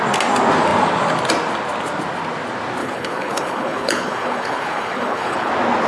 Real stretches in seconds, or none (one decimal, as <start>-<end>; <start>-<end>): 0.0-2.8; 5.5-5.9